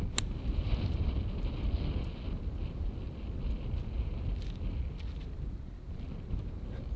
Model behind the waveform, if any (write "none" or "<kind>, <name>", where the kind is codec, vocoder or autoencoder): none